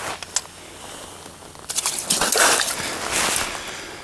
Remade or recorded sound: recorded